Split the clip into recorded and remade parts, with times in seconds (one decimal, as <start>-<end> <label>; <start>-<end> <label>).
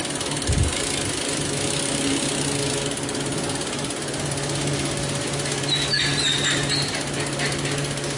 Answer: 0.0-8.2 recorded